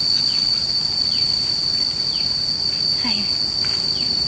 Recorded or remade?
recorded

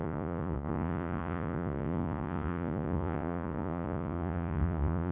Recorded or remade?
remade